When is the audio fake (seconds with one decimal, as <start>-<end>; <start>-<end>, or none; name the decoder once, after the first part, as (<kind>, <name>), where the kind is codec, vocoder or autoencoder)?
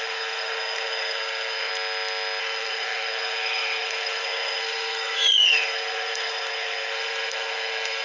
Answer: 0.0-1.7 (codec, SNAC); 2.4-8.0